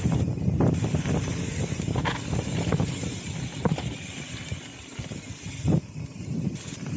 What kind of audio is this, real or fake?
real